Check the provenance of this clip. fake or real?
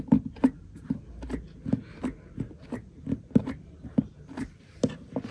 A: real